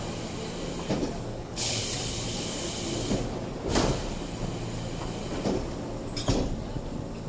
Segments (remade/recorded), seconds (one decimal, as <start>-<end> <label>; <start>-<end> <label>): 0.0-1.3 recorded; 1.3-1.8 remade; 1.8-7.3 recorded